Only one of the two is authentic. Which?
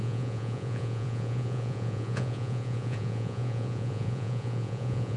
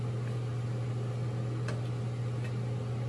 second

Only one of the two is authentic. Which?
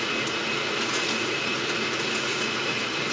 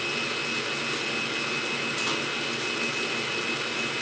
second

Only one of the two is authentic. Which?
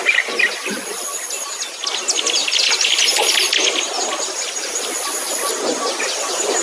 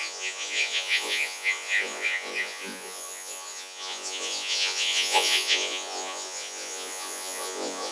first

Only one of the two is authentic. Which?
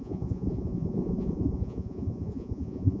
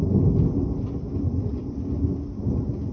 second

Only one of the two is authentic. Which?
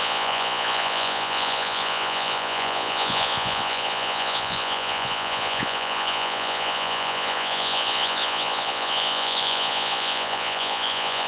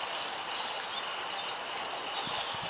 second